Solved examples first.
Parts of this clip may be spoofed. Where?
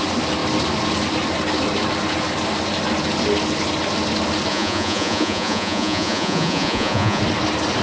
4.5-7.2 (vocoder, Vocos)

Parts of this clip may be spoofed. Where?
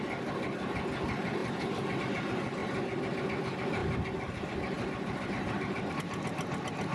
none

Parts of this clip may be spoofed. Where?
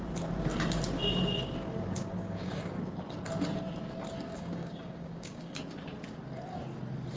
2.2-2.8 (codec, DAC); 4.3-5.6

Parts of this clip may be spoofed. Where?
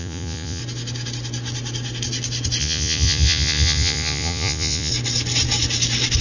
0.0-0.6 (vocoder, Vocos); 2.6-4.9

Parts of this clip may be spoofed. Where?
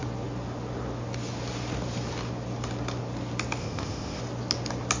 3.6-4.2 (codec, ZipCodec)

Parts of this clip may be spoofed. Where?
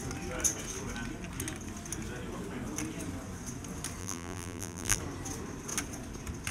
4.0-5.0 (vocoder, BigVGAN v2)